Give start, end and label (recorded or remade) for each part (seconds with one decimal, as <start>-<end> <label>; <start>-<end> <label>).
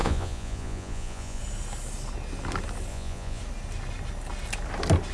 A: 0.0-1.4 remade; 1.4-2.9 recorded; 2.9-3.4 remade; 3.4-5.1 recorded